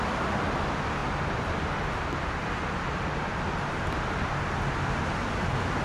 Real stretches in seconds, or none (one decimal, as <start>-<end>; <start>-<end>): 0.0-5.8

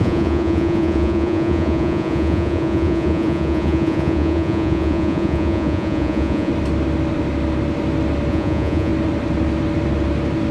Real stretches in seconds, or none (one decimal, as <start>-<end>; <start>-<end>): 6.5-8.3; 8.9-10.5

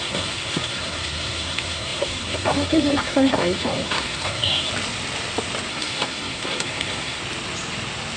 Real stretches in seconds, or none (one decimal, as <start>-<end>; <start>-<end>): 4.7-5.7; 7.2-8.2